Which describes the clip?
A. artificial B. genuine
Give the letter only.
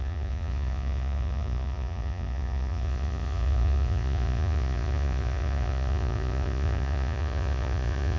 A